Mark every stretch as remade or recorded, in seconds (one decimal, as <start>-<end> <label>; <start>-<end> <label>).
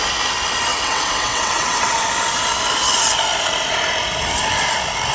0.0-0.7 recorded; 0.7-2.0 remade; 2.0-5.1 recorded